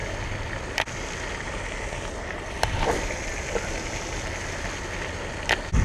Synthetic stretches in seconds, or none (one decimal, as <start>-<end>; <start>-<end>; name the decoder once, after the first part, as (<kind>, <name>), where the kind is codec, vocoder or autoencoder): none

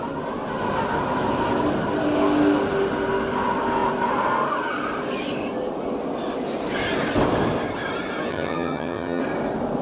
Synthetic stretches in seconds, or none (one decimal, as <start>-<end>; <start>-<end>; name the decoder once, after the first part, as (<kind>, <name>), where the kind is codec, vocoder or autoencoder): 8.3-9.2 (vocoder, HiFi-GAN)

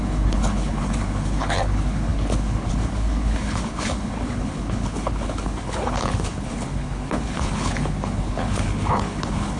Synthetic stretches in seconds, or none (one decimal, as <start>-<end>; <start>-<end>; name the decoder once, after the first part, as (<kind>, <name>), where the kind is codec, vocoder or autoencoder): 0.0-9.6 (codec, HILCodec)

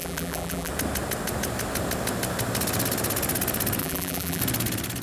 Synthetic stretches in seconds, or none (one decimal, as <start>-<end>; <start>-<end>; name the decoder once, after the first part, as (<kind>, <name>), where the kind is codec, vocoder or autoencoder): 0.0-0.7 (vocoder, BigVGAN v2); 3.8-4.4